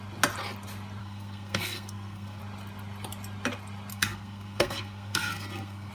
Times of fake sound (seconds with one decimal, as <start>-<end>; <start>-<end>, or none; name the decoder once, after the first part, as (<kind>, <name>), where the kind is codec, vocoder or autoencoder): 1.0-2.4 (codec, SNAC); 3.9-5.9